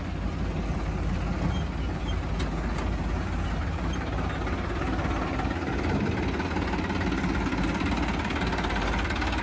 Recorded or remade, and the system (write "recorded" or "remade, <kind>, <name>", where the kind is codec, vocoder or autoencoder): recorded